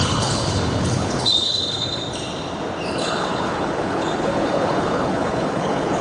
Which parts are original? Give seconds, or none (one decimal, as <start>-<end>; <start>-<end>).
2.0-2.9